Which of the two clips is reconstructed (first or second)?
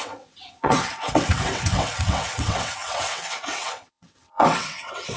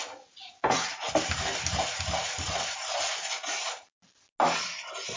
first